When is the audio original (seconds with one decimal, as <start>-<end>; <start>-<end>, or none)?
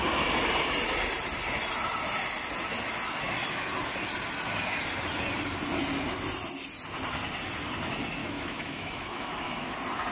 0.0-8.2; 9.7-10.1